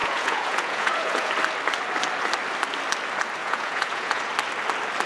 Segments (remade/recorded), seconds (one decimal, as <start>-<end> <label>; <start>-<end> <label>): 0.0-1.3 remade; 1.3-3.4 recorded; 3.4-4.2 remade; 4.2-5.1 recorded